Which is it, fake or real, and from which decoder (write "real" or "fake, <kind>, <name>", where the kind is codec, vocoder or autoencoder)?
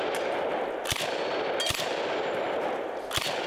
real